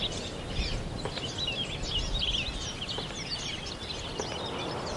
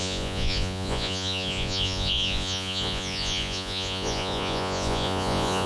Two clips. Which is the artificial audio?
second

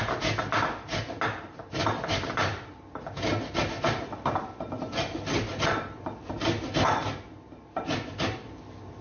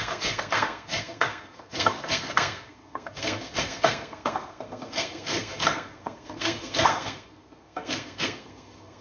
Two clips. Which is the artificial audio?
second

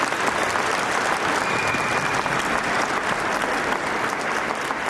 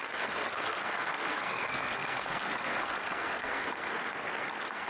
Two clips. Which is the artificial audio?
second